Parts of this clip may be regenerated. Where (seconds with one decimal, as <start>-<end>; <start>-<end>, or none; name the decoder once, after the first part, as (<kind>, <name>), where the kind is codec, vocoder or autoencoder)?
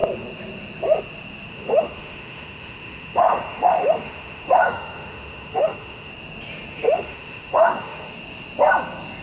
1.5-6.1 (autoencoder, DAC-VAE); 6.7-8.1